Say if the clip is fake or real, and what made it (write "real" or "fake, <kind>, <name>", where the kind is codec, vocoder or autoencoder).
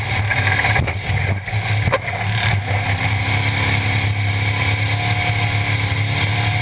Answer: real